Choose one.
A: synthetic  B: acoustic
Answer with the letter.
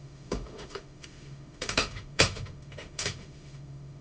A